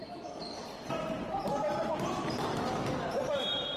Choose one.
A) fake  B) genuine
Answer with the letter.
A